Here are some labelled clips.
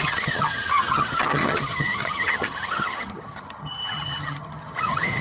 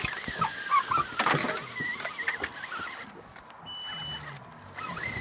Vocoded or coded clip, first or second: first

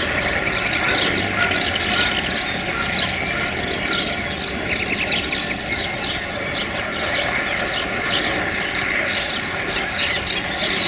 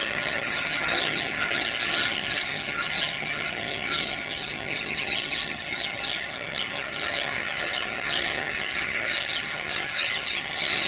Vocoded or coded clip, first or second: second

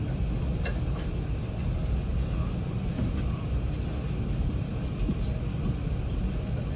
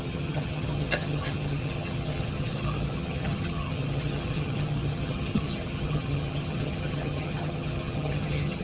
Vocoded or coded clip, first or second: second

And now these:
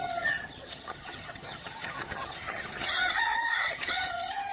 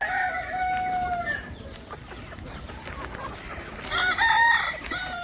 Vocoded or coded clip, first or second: first